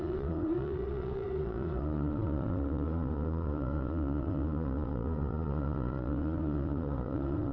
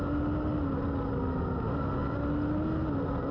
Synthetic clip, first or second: first